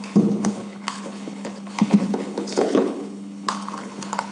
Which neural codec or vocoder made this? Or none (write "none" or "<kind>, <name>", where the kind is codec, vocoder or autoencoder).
codec, HILCodec